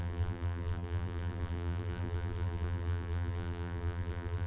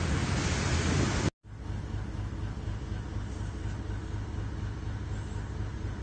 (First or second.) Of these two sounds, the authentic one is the second